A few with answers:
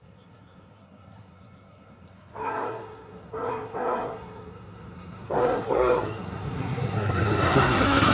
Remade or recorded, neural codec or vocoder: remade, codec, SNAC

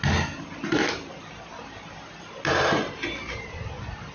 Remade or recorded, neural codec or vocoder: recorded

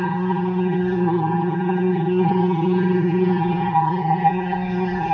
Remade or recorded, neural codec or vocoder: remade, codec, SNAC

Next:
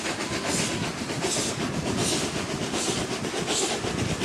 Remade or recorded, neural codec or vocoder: recorded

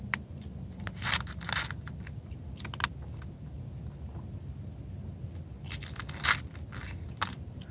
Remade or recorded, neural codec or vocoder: recorded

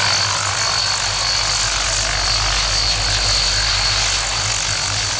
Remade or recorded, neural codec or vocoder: recorded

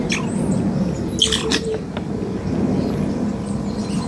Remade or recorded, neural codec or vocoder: recorded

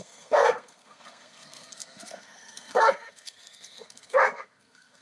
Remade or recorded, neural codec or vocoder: remade, codec, SNAC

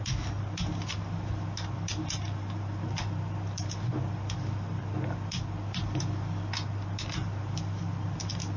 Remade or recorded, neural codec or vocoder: recorded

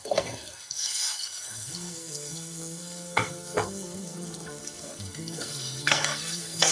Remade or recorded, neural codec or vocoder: remade, codec, SNAC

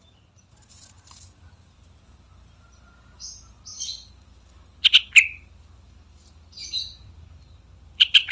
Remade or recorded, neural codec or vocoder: recorded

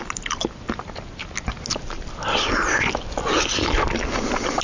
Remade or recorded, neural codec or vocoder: recorded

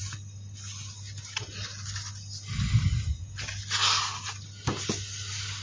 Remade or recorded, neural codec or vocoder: recorded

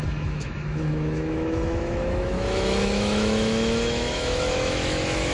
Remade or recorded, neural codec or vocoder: remade, autoencoder, DAC-VAE